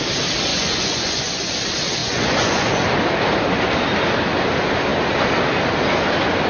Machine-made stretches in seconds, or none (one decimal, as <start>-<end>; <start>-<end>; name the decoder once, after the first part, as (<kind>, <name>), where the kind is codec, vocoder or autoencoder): 0.5-1.5 (vocoder, Vocos); 2.0-2.8